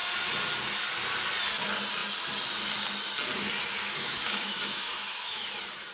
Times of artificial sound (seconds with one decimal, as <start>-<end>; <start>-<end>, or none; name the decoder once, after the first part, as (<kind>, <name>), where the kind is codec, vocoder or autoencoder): 3.8-5.5 (autoencoder, DAC-VAE)